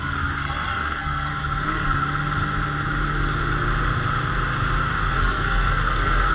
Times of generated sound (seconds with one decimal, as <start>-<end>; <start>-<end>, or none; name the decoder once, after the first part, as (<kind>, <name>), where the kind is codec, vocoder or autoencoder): 0.0-1.3 (codec, SNAC); 5.1-6.3